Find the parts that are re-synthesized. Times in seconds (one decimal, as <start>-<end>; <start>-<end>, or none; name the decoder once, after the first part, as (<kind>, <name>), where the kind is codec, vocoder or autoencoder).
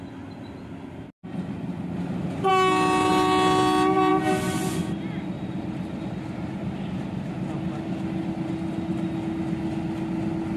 none